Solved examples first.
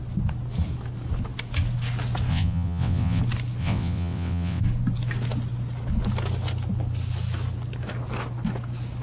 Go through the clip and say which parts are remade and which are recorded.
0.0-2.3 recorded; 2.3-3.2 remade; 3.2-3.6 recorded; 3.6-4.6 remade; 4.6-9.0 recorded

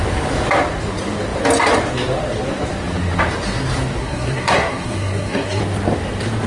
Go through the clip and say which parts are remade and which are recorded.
0.0-4.0 recorded; 4.0-5.6 remade; 5.6-6.5 recorded